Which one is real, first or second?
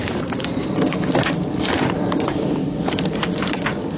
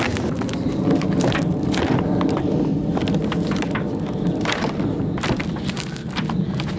second